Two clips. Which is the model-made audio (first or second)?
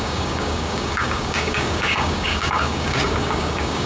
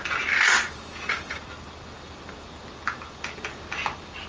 first